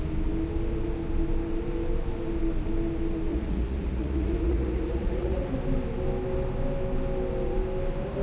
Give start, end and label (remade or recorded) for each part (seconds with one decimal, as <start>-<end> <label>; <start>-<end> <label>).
0.0-3.3 recorded; 3.3-5.5 remade; 5.5-8.2 recorded